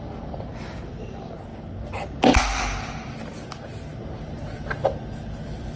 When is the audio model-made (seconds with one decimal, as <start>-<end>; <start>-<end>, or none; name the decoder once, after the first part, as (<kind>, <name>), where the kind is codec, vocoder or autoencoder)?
none